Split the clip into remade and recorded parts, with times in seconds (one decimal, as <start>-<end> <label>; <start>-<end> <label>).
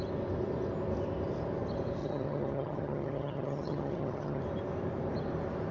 0.0-2.0 recorded; 2.0-4.4 remade; 4.4-5.7 recorded